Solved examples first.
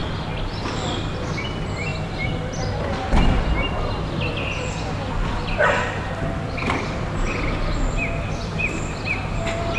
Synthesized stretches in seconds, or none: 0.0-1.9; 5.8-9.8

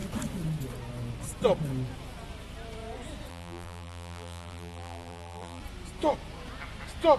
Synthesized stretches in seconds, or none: 3.3-5.6

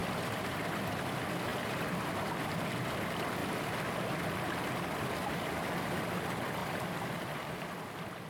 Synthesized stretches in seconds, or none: 0.0-1.1; 1.5-2.7; 6.6-7.8

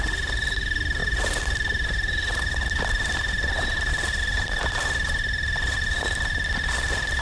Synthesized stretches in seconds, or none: 1.0-3.9